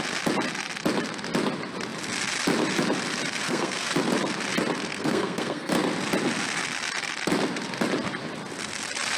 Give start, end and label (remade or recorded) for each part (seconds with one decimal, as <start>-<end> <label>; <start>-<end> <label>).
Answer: 0.0-3.4 recorded; 3.4-3.9 remade; 3.9-4.9 recorded; 4.9-5.7 remade; 5.7-9.2 recorded